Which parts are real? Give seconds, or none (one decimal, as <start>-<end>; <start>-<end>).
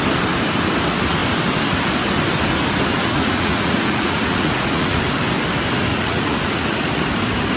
0.0-2.9; 5.0-5.9; 7.0-7.6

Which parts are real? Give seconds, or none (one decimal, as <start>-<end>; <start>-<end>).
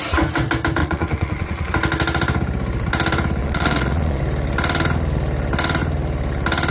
0.0-0.8; 1.7-3.4; 4.2-6.7